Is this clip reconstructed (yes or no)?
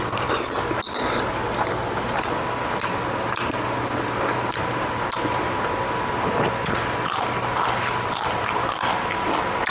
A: no